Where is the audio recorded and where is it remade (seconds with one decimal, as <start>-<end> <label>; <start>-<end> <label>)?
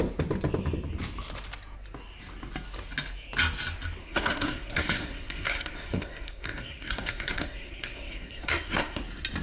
0.0-4.0 recorded; 4.0-9.0 remade; 9.0-9.4 recorded